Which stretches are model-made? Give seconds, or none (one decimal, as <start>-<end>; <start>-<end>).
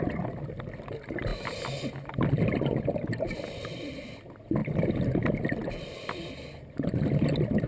none